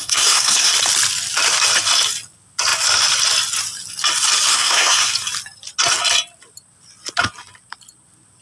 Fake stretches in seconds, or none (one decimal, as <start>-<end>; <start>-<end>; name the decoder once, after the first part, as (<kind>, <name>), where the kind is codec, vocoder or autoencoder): 0.0-0.7 (codec, SNAC); 4.5-5.1